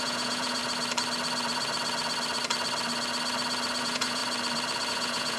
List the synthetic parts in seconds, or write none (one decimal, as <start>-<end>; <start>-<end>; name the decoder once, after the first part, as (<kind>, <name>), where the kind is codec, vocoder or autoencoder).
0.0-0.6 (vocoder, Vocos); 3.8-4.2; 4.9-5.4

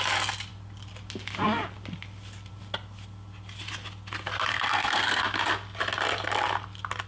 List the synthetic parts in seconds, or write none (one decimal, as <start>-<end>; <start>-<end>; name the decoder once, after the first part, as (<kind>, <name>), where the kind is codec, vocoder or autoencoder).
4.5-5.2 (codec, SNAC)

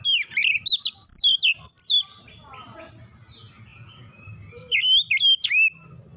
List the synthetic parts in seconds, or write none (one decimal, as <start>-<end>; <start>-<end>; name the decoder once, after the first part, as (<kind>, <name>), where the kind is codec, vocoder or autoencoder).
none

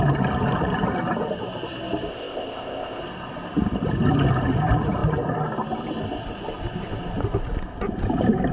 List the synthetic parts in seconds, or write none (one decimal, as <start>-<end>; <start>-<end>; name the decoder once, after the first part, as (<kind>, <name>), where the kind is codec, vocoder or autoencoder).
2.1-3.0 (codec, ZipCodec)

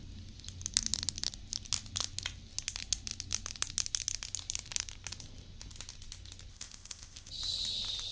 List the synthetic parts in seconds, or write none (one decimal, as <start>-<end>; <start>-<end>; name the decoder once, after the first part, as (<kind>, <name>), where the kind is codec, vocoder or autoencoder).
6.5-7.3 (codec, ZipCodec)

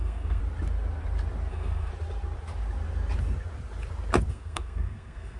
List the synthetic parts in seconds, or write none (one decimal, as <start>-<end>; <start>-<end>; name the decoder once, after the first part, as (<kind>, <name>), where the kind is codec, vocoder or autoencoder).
0.0-0.4 (codec, SNAC); 1.5-1.9; 4.3-5.4

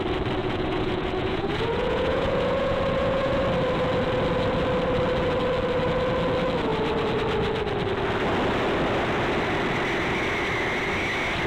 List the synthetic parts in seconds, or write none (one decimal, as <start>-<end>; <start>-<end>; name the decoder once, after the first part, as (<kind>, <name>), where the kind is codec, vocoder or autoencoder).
0.4-3.3 (vocoder, Vocos)

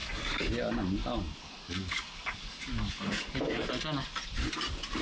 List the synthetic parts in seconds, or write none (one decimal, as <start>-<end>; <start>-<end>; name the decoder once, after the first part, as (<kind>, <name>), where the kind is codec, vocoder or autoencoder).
0.0-0.5 (codec, DAC); 1.0-3.7